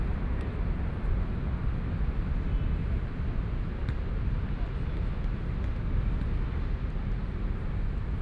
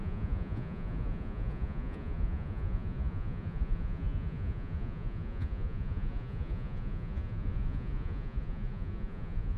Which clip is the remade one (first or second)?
second